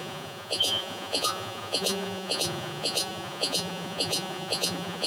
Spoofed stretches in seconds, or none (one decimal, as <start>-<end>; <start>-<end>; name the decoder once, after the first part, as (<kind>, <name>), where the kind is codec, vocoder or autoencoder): 0.0-5.1 (vocoder, Vocos)